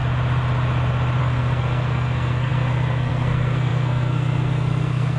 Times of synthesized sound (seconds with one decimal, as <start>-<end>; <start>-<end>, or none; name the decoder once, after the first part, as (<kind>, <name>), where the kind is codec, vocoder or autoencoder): 1.2-5.2 (codec, SNAC)

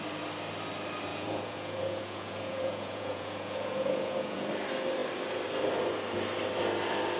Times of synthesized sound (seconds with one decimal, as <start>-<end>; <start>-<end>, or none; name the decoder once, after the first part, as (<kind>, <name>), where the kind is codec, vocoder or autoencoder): 1.1-4.5 (vocoder, Vocos)

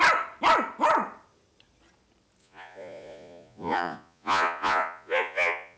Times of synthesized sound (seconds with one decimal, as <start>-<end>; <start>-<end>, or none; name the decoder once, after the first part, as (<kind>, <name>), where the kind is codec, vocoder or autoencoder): 2.4-5.8 (vocoder, Vocos)

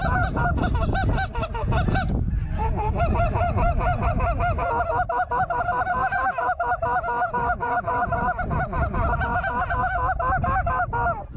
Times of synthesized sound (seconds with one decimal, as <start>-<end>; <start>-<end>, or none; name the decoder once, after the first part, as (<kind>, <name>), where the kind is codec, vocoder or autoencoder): 0.0-0.7 (vocoder, Vocos); 1.9-4.1

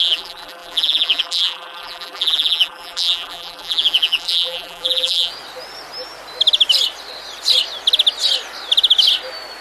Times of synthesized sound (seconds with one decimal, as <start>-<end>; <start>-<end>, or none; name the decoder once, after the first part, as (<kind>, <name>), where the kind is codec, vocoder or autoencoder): 0.0-5.3 (vocoder, BigVGAN v2)

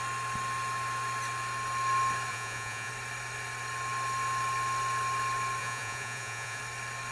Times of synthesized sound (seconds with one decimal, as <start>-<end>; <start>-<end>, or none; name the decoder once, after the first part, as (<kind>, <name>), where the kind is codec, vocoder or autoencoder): 2.3-2.9 (vocoder, Vocos); 5.6-6.6

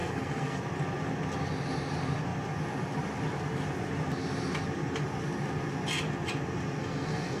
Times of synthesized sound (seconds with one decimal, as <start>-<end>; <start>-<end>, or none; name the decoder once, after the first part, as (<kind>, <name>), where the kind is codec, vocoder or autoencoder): 0.0-0.6 (codec, SNAC); 6.8-7.4